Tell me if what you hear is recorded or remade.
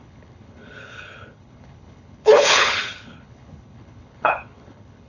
remade